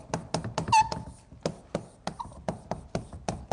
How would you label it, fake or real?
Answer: real